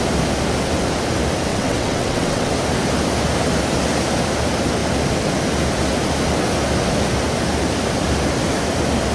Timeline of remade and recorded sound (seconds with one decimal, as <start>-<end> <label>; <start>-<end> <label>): 0.0-1.5 recorded; 1.5-2.5 remade; 2.5-9.1 recorded